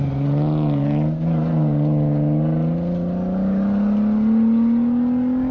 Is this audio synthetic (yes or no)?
no